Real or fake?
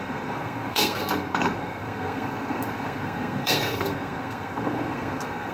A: fake